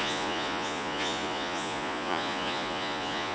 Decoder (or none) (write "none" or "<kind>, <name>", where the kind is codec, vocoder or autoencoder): vocoder, Vocos